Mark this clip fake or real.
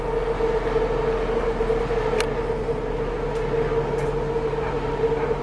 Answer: real